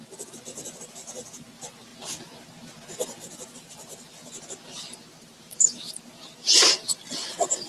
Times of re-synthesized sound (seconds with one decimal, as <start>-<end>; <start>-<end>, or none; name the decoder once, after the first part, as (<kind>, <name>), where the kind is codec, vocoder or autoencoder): none